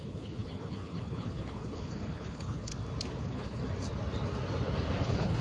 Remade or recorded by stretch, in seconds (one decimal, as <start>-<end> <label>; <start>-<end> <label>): 0.0-2.7 remade; 2.7-3.2 recorded; 3.2-3.6 remade; 3.6-5.0 recorded; 5.0-5.4 remade